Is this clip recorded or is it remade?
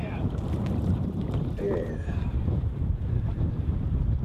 remade